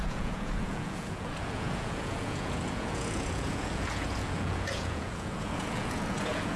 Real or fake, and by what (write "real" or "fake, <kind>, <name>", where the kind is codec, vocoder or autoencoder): fake, vocoder, Vocos